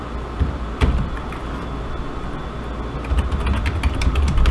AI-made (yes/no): no